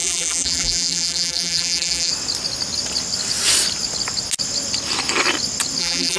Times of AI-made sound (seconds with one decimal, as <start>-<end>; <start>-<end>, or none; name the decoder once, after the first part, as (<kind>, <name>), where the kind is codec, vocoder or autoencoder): 0.0-2.1 (vocoder, BigVGAN v2); 5.8-6.2